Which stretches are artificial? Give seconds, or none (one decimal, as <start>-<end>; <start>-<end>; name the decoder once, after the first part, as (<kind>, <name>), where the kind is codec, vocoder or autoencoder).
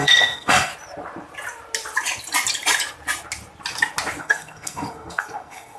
0.0-0.7 (codec, SNAC); 4.2-5.8